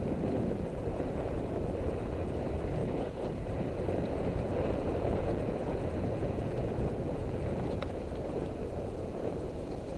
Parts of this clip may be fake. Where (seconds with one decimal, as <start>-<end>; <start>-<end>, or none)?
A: 0.0-10.0